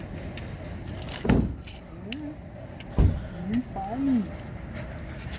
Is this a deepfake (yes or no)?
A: no